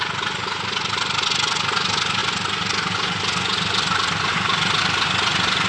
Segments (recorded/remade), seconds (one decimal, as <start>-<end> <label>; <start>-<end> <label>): 0.0-5.7 recorded